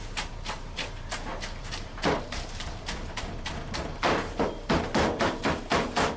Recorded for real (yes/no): no